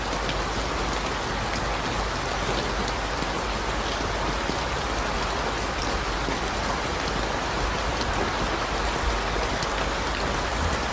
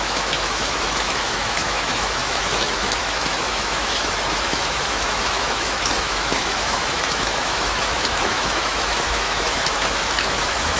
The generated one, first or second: second